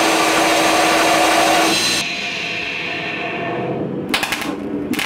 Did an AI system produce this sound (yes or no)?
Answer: no